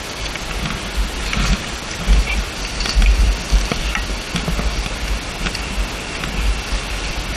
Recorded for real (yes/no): yes